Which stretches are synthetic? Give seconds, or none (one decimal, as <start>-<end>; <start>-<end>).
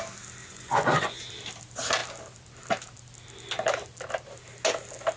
0.4-1.2